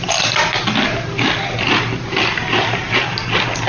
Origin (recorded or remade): recorded